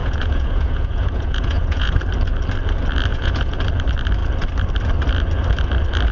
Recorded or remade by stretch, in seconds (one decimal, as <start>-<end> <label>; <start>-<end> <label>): 0.0-2.0 remade; 2.0-3.1 recorded; 3.1-3.6 remade; 3.6-6.1 recorded